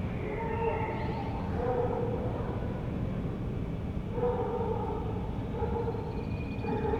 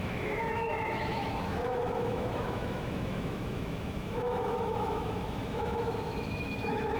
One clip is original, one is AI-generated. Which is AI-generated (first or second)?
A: second